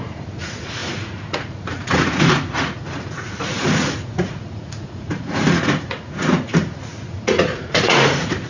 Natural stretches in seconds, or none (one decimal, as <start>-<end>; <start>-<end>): none

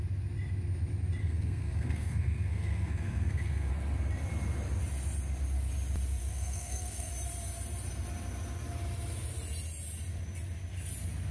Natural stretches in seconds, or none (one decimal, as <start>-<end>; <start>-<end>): 0.0-1.2; 3.7-6.2; 7.1-11.3

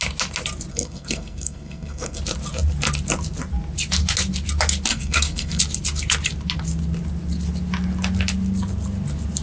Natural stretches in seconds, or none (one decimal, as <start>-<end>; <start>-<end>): 0.0-0.7; 2.2-4.9; 5.6-9.4

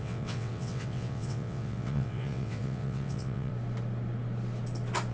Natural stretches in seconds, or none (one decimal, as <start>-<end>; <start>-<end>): 3.5-5.1

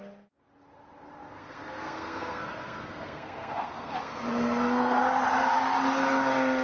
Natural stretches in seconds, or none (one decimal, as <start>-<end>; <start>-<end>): 0.0-1.3; 5.0-6.6